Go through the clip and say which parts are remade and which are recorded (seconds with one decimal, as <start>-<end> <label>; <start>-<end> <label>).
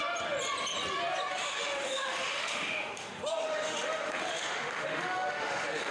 0.0-1.3 recorded; 1.3-5.9 remade